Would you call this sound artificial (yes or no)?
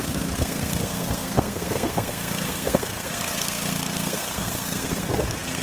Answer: yes